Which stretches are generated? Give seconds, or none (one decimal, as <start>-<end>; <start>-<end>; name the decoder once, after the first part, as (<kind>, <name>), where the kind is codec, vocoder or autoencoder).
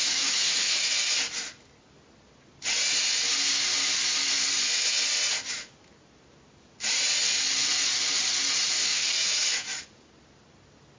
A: 0.0-0.9 (autoencoder, DAC-VAE); 8.9-9.8